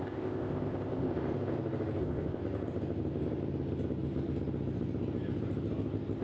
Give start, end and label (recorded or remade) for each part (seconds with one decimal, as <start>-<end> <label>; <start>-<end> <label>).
0.0-1.1 remade; 1.1-2.0 recorded; 2.0-2.4 remade; 2.4-6.2 recorded